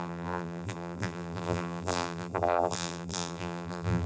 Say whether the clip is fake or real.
fake